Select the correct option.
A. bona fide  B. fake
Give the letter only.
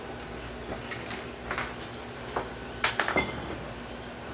A